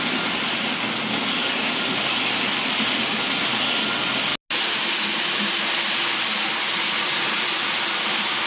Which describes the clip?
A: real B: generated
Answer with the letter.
A